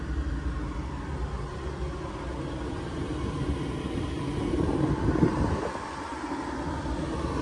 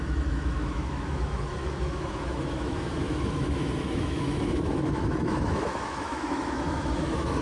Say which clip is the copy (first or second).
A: second